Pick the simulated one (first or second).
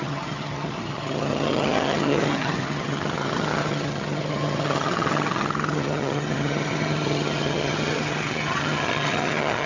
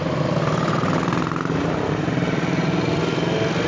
first